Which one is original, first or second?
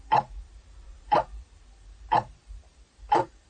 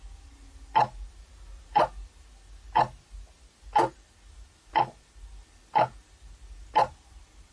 second